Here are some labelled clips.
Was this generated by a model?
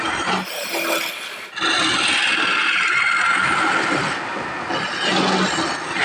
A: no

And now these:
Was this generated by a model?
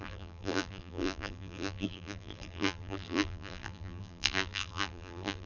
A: yes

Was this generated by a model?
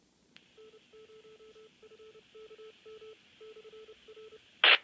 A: no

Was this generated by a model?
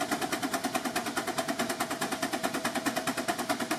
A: no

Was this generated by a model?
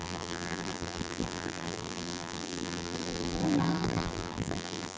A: yes